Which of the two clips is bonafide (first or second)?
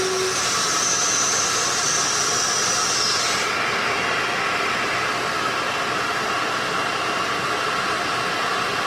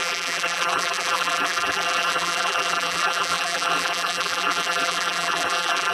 first